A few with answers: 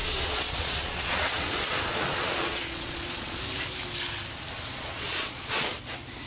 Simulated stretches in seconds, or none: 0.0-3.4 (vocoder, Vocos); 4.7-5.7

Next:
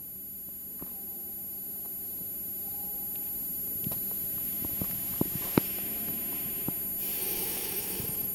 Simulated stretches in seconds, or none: 7.2-8.3 (autoencoder, DAC-VAE)